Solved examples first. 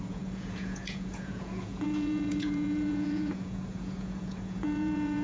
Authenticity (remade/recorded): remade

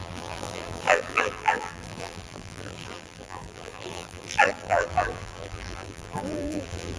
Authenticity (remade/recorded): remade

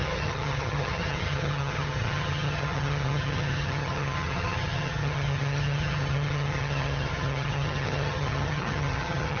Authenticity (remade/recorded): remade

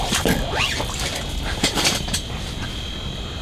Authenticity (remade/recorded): remade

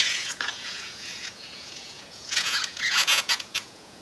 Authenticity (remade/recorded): remade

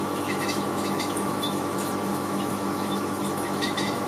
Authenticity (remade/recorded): remade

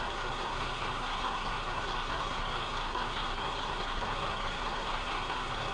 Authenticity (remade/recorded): remade